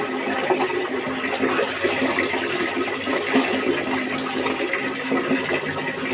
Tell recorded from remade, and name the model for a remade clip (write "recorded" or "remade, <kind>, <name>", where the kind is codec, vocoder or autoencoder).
recorded